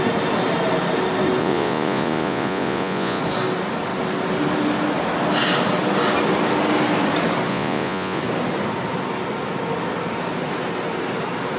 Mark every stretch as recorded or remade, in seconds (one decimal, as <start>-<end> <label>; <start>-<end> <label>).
0.0-1.4 recorded; 1.4-3.2 remade; 3.2-7.5 recorded; 7.5-8.2 remade; 8.2-11.6 recorded